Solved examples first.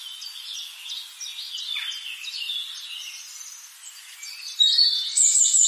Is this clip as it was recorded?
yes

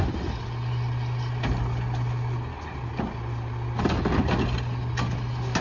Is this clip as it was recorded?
yes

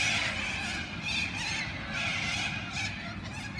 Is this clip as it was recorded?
yes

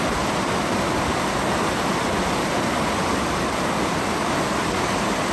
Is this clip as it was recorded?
yes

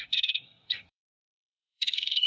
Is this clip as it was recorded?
no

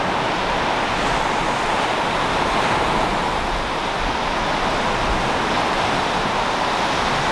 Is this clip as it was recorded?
yes